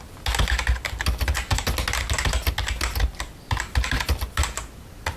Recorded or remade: recorded